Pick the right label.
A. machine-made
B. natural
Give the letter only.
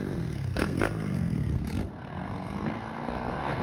A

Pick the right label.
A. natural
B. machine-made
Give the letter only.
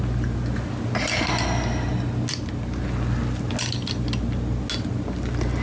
A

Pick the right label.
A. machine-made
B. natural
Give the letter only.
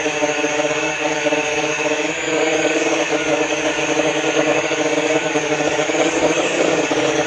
A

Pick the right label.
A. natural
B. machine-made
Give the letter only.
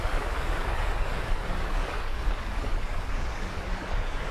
B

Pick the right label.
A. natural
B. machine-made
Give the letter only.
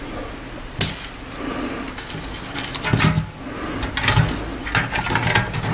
A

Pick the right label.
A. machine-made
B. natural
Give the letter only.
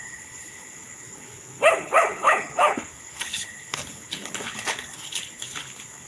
A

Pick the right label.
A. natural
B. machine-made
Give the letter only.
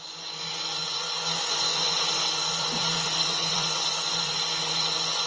B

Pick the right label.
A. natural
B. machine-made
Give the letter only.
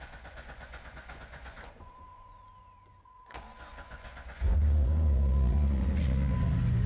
B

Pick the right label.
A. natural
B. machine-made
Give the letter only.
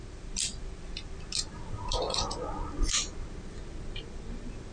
A